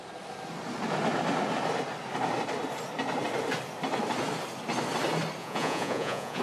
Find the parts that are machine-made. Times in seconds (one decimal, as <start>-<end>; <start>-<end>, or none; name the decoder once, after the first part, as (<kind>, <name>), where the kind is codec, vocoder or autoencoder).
5.4-6.4 (vocoder, Vocos)